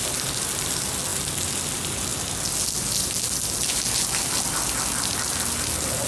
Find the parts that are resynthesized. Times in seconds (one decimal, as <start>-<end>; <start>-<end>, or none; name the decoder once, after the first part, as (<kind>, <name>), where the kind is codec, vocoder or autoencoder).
none